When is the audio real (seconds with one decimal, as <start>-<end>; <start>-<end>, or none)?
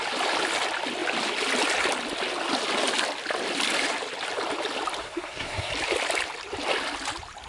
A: 0.0-5.0; 5.7-7.5